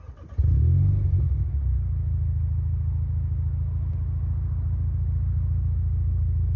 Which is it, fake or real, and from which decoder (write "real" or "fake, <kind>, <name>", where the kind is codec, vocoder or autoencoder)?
real